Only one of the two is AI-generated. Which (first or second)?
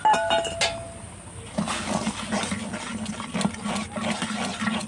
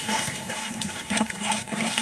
second